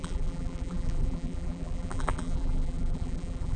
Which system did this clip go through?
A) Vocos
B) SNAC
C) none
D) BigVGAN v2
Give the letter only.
D